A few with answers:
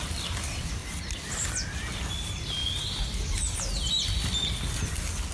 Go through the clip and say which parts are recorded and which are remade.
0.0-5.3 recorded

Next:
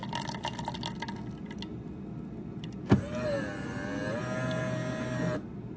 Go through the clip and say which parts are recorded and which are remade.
0.0-5.8 recorded